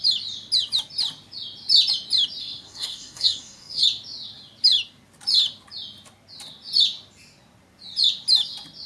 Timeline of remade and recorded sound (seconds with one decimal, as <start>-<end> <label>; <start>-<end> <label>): 0.0-2.4 recorded; 2.4-3.8 remade; 3.8-8.9 recorded